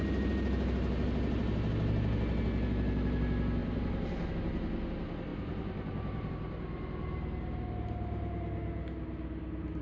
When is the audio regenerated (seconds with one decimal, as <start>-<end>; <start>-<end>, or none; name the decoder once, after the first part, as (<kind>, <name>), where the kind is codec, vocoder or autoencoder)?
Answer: 3.6-4.3 (vocoder, BigVGAN v2); 5.3-6.3